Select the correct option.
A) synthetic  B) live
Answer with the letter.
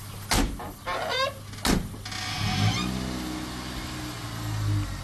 B